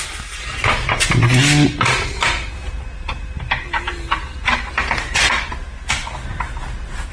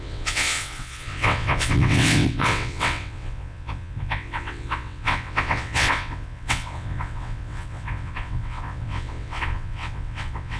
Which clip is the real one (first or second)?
first